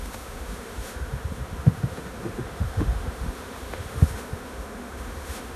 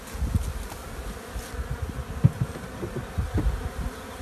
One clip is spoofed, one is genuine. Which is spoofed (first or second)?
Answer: first